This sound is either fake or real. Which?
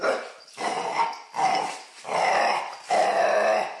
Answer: real